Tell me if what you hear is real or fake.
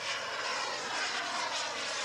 real